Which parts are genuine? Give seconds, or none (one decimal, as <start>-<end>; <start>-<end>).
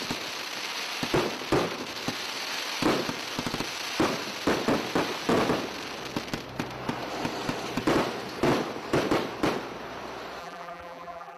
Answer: 0.0-10.4